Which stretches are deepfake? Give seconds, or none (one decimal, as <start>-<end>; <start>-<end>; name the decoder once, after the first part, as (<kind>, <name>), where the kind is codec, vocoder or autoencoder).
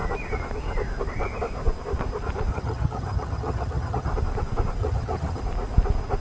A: 2.5-4.1 (vocoder, HiFi-GAN); 4.8-5.4